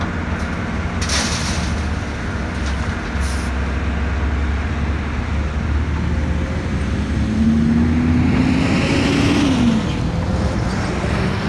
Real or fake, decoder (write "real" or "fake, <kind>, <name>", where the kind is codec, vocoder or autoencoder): real